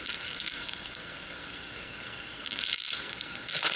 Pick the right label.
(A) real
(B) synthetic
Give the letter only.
B